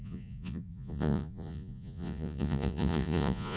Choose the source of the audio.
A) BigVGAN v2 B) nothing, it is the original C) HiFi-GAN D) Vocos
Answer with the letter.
D